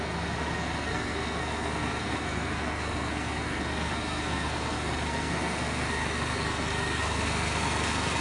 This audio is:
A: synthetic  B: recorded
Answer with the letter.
A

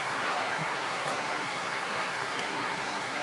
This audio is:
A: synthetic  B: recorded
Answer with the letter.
A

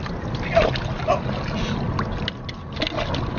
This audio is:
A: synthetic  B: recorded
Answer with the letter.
B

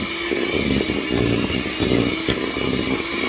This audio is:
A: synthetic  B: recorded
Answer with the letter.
B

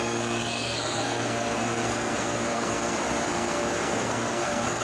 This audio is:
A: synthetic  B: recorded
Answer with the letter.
A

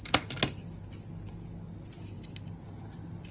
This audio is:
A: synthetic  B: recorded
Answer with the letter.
B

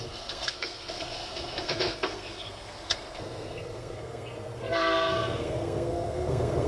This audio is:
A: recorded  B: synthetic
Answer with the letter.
B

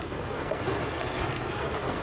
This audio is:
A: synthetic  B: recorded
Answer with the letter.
A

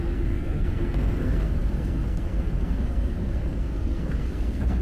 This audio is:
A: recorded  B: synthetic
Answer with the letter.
B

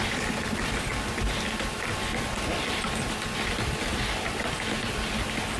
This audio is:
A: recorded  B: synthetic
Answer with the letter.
A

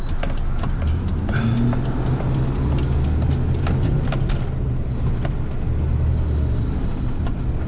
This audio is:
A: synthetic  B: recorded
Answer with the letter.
B